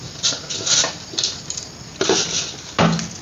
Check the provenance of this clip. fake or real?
real